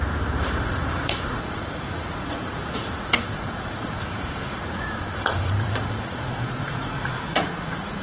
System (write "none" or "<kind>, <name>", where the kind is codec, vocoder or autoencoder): vocoder, Vocos